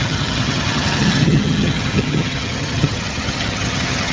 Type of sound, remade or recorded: remade